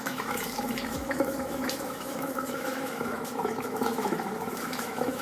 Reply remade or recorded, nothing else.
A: remade